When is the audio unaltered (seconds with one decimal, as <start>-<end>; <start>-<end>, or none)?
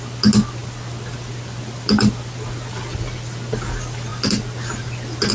0.0-5.3